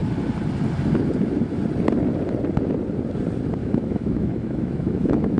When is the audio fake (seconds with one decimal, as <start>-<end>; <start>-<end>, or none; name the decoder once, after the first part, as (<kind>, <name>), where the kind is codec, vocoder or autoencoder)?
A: 3.6-5.4 (autoencoder, DAC-VAE)